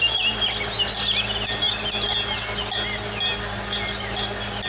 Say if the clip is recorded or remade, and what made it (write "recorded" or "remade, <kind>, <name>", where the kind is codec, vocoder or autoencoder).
recorded